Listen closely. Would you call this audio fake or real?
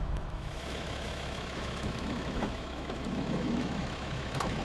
fake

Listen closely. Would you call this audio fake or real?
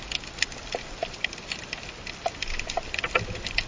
real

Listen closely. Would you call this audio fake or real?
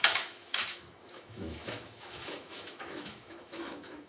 fake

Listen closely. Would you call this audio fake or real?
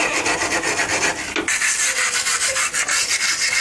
real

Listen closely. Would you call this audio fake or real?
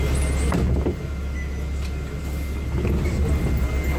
real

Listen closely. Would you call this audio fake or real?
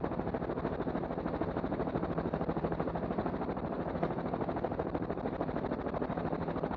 real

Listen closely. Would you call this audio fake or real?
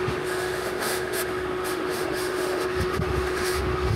fake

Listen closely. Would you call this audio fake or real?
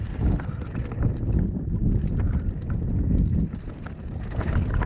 real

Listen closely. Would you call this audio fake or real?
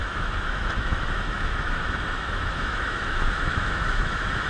fake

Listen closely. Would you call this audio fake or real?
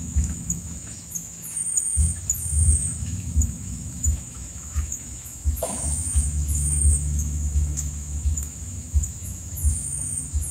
fake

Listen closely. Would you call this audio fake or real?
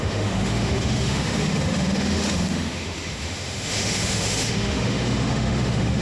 fake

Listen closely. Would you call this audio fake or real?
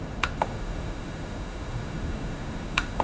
fake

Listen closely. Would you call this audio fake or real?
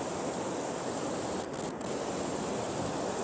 real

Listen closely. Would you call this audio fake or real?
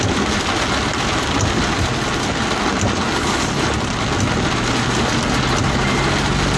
real